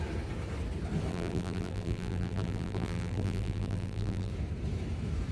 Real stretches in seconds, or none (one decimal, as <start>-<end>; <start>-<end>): 0.0-1.1; 4.3-5.3